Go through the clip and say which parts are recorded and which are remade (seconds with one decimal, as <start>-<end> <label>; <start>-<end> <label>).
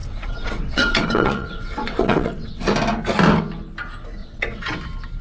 0.0-2.7 remade; 2.7-4.2 recorded; 4.2-4.8 remade; 4.8-5.2 recorded